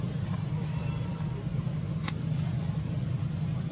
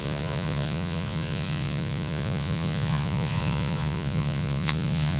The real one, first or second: first